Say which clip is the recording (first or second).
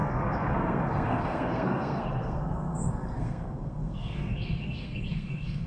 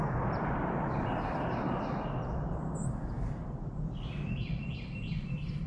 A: second